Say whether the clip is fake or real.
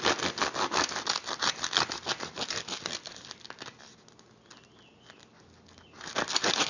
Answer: real